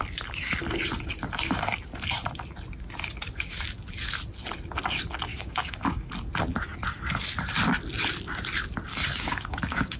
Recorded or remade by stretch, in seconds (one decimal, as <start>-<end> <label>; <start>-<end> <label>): 0.0-5.3 recorded; 5.3-6.1 remade; 6.1-8.9 recorded; 8.9-10.0 remade